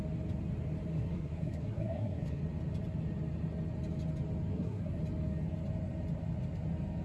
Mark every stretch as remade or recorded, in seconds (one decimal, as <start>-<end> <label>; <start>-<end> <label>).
0.0-0.9 recorded; 0.9-2.4 remade; 2.4-4.5 recorded; 4.5-5.0 remade; 5.0-7.0 recorded